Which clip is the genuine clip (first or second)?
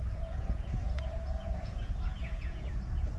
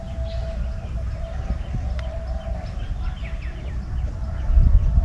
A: second